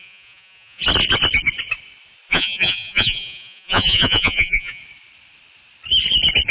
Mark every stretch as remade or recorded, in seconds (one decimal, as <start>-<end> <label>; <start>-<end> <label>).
0.0-0.8 remade; 0.8-2.3 recorded; 2.3-4.8 remade; 4.8-6.5 recorded